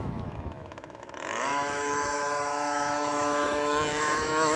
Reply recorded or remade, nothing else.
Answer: remade